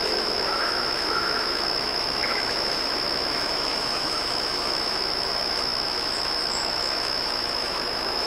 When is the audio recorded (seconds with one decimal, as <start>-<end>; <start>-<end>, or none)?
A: none